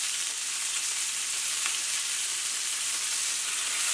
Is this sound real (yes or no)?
yes